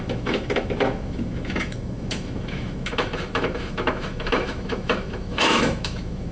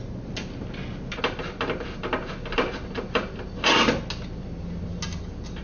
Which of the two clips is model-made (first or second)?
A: first